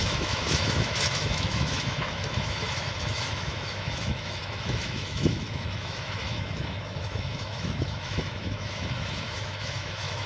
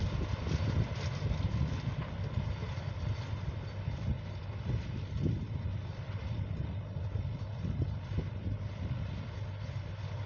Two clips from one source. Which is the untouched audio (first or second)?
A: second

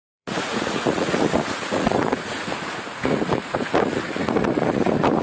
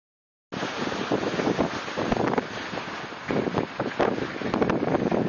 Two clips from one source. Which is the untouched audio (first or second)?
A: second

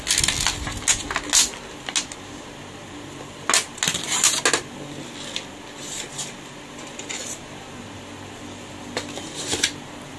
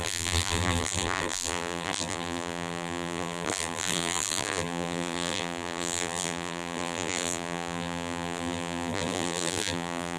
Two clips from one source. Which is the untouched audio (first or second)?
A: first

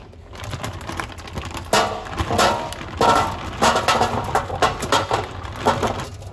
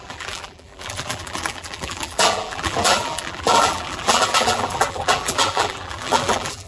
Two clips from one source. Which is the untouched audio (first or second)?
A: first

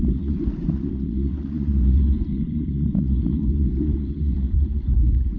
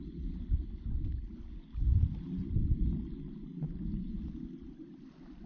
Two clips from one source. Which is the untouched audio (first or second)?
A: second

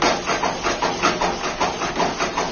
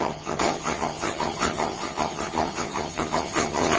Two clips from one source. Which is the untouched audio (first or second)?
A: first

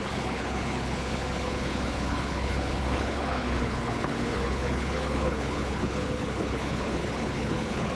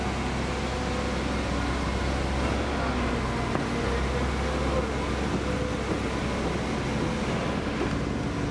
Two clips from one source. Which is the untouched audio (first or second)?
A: second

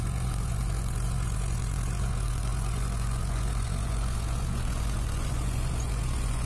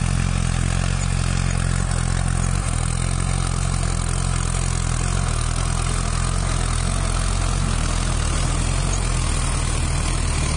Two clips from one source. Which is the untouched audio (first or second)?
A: second